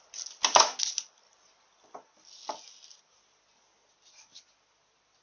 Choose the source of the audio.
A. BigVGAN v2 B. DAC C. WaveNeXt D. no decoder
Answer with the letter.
D